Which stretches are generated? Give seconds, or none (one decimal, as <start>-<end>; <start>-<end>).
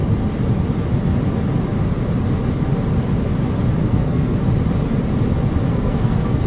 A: 3.8-4.4; 5.7-6.5